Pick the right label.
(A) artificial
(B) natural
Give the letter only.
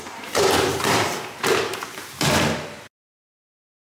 A